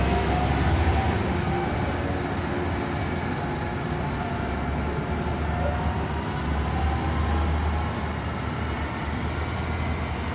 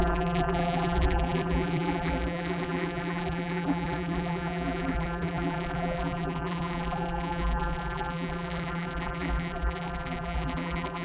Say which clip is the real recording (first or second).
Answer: first